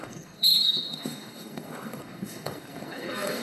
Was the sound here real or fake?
fake